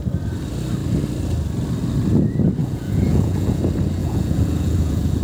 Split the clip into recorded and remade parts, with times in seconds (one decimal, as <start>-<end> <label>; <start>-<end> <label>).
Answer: 0.0-2.6 recorded; 2.6-3.6 remade; 3.6-4.0 recorded; 4.0-5.2 remade